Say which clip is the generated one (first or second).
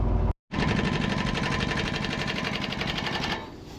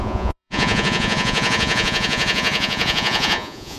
second